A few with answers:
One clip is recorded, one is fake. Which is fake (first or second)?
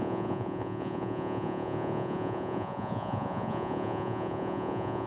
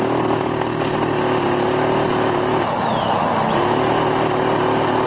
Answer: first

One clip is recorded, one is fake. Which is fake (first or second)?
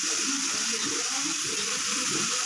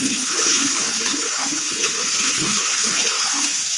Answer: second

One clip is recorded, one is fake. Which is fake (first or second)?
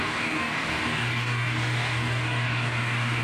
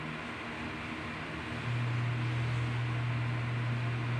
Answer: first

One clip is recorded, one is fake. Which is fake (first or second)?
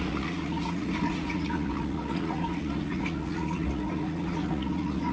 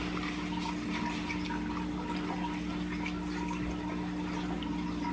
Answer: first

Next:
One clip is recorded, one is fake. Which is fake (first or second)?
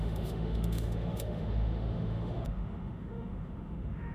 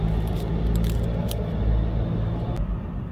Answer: first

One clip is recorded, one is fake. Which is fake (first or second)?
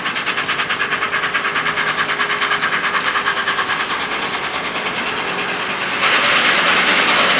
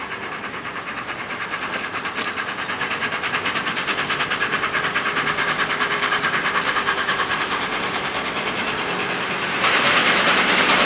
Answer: second